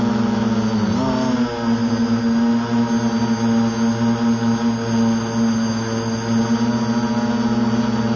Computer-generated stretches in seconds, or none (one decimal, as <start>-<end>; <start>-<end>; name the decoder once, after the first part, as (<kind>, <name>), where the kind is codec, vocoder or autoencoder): none